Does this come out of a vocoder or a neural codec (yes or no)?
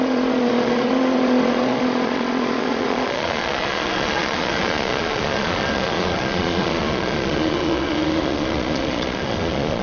yes